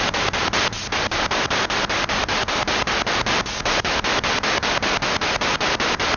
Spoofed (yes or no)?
no